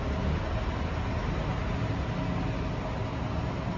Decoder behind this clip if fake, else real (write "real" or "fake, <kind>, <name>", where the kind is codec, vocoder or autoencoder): real